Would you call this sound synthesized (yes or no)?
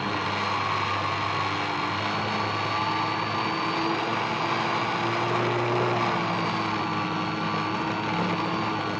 no